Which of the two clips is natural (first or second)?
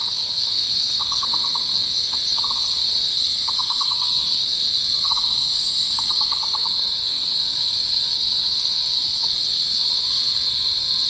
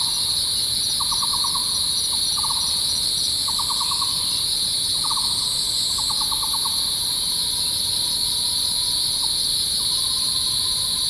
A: second